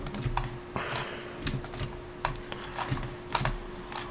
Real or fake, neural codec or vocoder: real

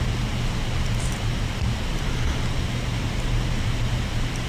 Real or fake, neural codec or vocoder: fake, vocoder, BigVGAN v2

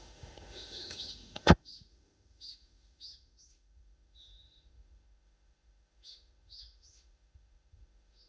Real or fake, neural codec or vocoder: fake, autoencoder, DAC-VAE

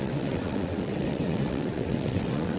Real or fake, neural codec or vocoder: fake, vocoder, WaveNeXt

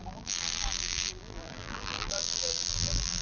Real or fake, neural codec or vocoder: fake, vocoder, BigVGAN v2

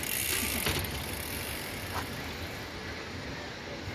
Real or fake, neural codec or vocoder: real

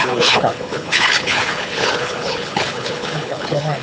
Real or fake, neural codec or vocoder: fake, codec, HILCodec